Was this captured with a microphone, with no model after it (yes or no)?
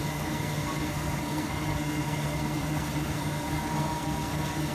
no